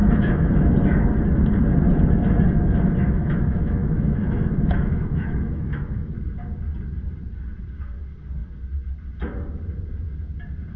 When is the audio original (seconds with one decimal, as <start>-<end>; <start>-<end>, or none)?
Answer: 0.7-3.2; 6.1-10.8